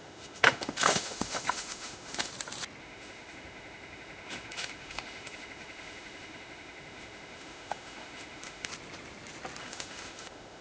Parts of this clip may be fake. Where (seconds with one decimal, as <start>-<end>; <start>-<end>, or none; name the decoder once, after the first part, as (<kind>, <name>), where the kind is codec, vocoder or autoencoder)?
0.0-2.3 (autoencoder, DAC-VAE); 2.8-8.7; 9.6-10.6